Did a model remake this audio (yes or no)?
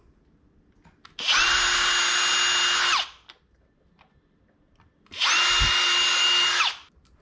no